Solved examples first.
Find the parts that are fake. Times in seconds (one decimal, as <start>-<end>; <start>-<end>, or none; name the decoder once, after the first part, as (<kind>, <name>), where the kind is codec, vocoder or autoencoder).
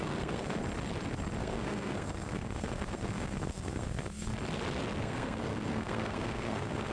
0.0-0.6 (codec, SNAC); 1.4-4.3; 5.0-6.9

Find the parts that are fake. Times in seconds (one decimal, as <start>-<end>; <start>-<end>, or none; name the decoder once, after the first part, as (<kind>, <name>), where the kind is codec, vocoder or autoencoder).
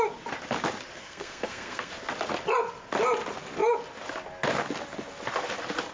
1.0-1.9 (codec, SNAC)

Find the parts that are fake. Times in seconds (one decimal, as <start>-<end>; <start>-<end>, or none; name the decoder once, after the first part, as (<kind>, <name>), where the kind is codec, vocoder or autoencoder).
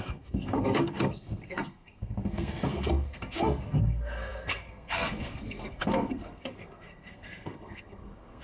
0.0-8.4 (codec, SNAC)